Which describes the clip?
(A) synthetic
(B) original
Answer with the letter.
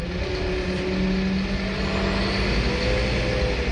B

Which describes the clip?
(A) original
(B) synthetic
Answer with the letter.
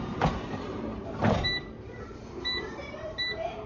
B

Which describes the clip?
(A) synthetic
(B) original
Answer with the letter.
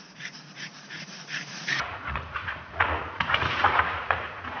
A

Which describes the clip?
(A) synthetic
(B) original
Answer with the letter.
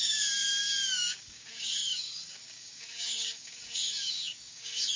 A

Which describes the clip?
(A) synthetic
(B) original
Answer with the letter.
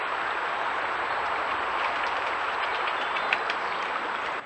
B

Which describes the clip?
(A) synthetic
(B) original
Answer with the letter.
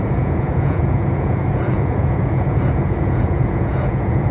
A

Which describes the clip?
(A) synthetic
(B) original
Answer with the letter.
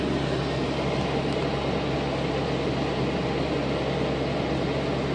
B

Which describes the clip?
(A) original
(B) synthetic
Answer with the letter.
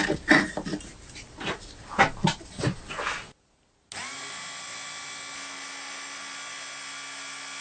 A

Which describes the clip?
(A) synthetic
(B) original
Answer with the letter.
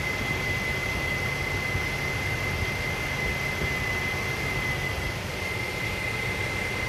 B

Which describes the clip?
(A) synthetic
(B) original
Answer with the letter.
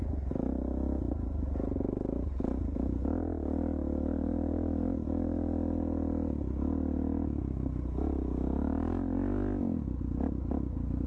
B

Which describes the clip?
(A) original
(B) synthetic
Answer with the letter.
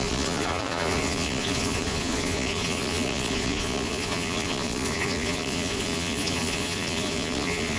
B